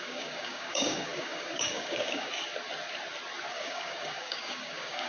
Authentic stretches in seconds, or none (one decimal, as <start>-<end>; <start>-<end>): 2.3-3.5